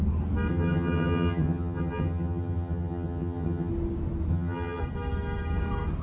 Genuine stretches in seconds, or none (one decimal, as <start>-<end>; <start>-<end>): 0.0-0.5; 3.7-4.3; 4.8-6.0